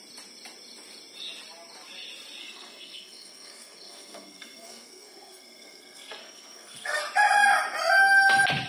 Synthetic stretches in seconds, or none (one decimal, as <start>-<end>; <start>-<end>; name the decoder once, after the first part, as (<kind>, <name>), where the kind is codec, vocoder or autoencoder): 2.4-7.0 (codec, SNAC)